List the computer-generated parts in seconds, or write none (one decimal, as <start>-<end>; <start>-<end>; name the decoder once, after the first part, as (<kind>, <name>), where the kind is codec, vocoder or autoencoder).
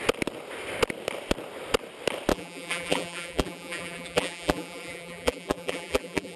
2.3-6.4 (vocoder, BigVGAN v2)